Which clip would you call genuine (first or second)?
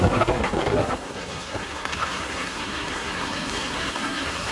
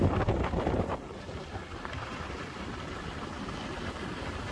second